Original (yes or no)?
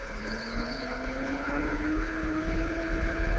no